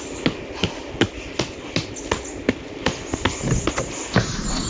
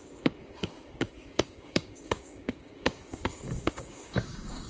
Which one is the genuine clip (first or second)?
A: first